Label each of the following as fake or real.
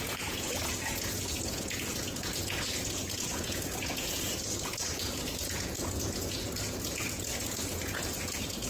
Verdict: fake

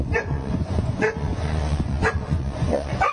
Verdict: fake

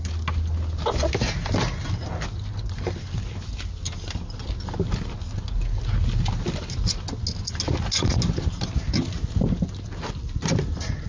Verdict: real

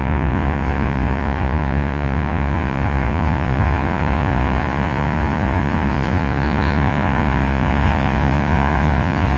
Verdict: fake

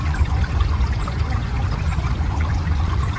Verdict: fake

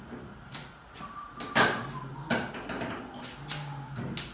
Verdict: real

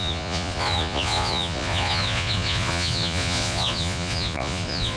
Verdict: fake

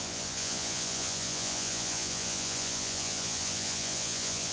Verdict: fake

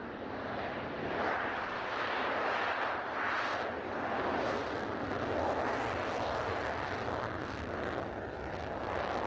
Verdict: real